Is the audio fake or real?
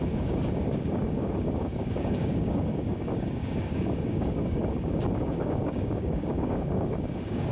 fake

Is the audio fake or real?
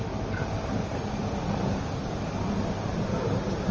real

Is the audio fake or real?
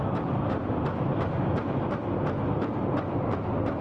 real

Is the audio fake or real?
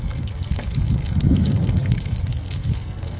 fake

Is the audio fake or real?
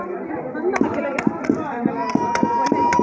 real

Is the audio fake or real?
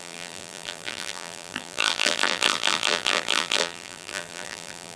fake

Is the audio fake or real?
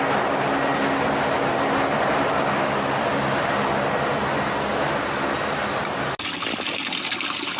real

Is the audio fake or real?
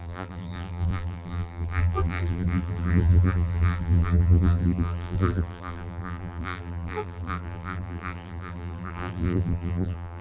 fake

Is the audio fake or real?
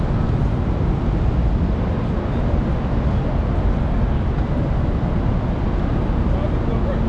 real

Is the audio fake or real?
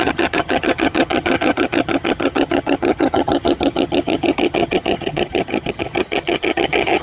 fake